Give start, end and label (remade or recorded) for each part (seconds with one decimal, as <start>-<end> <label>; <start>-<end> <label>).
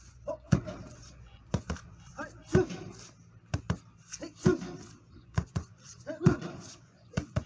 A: 0.0-2.1 remade; 2.1-5.1 recorded; 5.1-7.5 remade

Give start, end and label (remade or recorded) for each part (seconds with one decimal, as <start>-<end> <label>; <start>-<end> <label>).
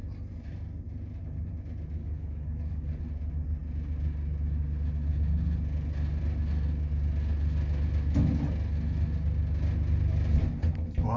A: 0.0-2.0 recorded; 2.0-3.0 remade; 3.0-11.2 recorded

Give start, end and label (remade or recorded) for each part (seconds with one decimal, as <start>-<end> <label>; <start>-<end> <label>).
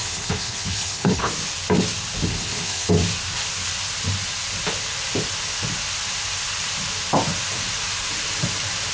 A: 0.0-1.3 remade; 1.3-2.3 recorded; 2.3-2.9 remade; 2.9-8.9 recorded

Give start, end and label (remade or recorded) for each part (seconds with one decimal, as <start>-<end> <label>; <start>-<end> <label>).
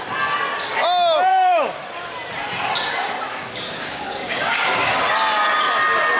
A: 0.0-1.3 recorded; 1.3-2.1 remade; 2.1-3.3 recorded; 3.3-5.0 remade; 5.0-6.2 recorded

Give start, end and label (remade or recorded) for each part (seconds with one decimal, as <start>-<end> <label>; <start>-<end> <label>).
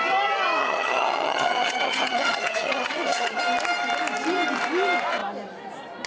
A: 0.0-0.6 recorded; 0.6-3.4 remade; 3.4-6.1 recorded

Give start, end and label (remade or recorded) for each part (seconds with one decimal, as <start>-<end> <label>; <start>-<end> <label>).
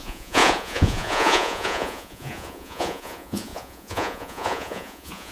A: 0.0-5.3 remade